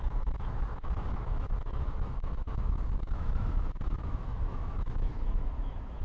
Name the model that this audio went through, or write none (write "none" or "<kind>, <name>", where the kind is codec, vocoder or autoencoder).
autoencoder, DAC-VAE